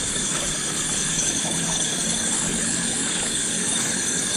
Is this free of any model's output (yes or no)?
no